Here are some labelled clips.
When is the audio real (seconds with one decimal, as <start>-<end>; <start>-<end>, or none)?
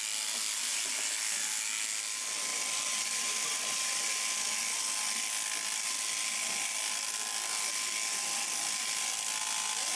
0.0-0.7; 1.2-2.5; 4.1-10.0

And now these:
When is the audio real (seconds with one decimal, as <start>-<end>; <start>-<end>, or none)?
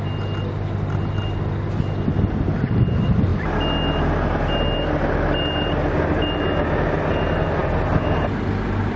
0.0-9.0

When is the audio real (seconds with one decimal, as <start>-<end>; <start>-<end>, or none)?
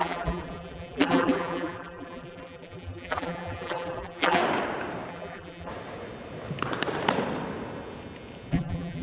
4.4-5.1; 5.7-8.5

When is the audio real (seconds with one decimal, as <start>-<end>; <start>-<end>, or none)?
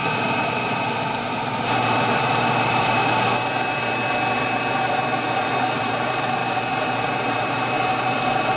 3.0-5.3; 6.4-7.0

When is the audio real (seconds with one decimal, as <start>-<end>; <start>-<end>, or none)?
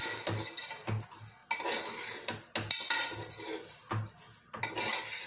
0.0-5.3